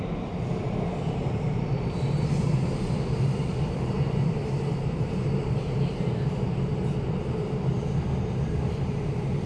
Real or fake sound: fake